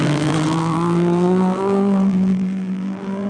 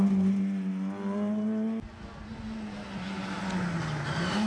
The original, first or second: second